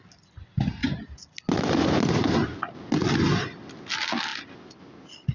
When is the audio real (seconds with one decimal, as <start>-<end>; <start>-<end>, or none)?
0.0-5.3